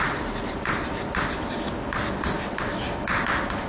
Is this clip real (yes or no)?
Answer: yes